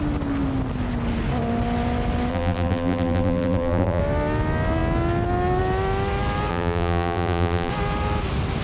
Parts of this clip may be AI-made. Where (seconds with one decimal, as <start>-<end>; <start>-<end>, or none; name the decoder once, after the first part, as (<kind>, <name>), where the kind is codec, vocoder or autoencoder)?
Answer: 2.3-4.0 (vocoder, BigVGAN v2); 6.5-7.7